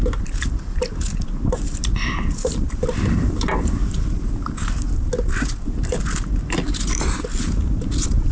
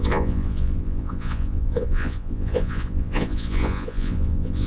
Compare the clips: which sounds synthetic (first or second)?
second